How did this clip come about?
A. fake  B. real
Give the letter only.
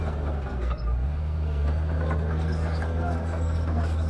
A